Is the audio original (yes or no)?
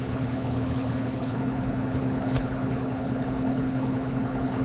no